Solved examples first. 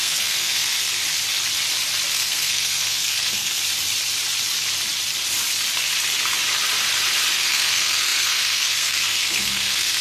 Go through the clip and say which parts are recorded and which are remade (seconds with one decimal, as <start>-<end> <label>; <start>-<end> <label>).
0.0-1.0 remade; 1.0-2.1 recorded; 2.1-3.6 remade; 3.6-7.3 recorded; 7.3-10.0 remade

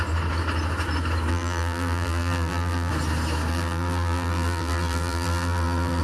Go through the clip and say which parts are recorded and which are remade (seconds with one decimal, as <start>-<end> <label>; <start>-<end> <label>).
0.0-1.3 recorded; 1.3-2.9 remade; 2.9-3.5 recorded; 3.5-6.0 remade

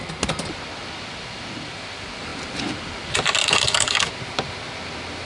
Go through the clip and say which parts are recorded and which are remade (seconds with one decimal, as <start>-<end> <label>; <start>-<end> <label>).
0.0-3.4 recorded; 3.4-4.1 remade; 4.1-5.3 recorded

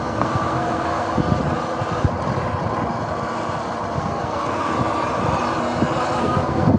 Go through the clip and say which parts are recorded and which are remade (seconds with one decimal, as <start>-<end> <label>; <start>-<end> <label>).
0.0-1.2 remade; 1.2-4.0 recorded; 4.0-4.8 remade; 4.8-6.2 recorded; 6.2-6.8 remade

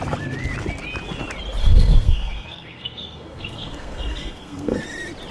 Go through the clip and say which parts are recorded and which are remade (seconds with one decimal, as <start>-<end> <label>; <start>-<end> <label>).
0.0-1.6 recorded; 1.6-4.8 remade; 4.8-5.3 recorded